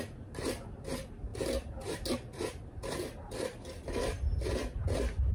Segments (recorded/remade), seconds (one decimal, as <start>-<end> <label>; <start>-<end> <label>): 0.0-5.3 recorded